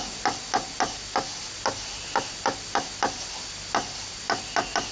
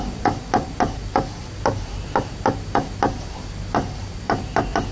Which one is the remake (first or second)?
second